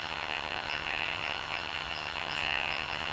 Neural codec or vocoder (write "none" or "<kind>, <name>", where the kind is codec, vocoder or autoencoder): vocoder, HiFi-GAN